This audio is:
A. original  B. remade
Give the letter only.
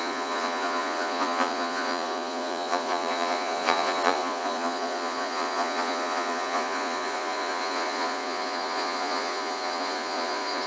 B